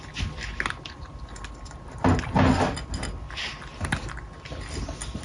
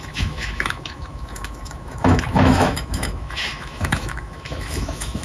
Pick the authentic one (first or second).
first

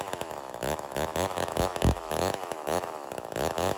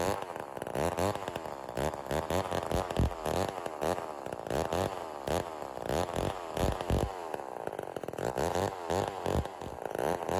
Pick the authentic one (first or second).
second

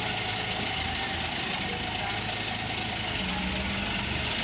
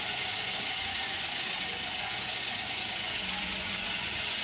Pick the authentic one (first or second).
first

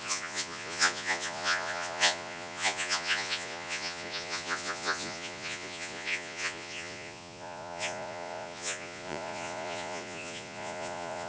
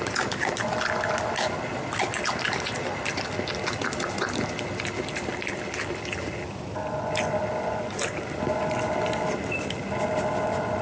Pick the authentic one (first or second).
second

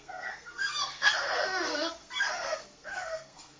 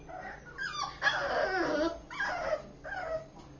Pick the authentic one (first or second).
second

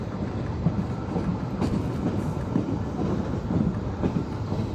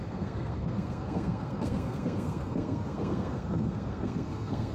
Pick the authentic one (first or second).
first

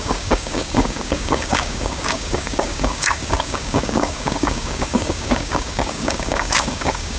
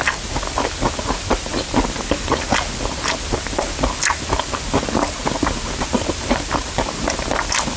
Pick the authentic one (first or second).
second